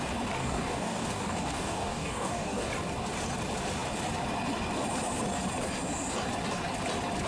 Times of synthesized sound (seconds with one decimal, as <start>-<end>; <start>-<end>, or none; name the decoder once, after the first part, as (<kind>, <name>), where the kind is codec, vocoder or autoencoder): 0.4-2.7 (codec, DAC)